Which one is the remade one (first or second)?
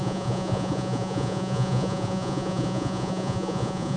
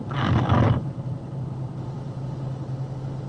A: first